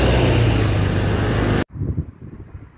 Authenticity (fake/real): real